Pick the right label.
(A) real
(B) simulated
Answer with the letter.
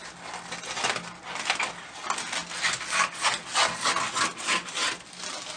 A